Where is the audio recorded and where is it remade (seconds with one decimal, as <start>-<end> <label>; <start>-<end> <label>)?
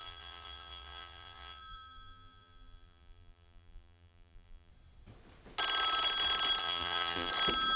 0.0-4.7 remade; 4.7-6.6 recorded; 6.6-7.3 remade; 7.3-7.8 recorded